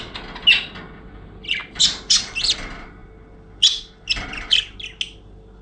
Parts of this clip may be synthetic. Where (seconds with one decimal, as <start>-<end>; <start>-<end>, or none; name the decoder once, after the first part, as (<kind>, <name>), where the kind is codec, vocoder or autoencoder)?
1.6-2.2 (vocoder, BigVGAN v2)